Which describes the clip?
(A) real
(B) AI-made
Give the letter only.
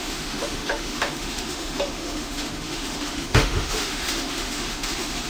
B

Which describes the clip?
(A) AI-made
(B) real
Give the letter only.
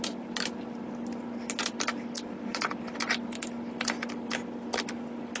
B